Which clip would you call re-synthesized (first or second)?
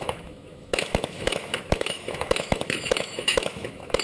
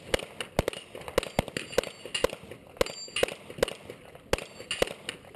first